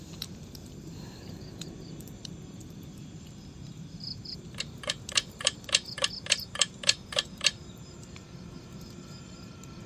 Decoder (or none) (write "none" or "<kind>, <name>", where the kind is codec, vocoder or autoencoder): vocoder, BigVGAN v2